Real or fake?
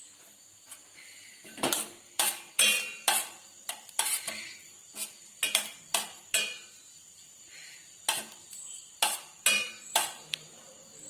fake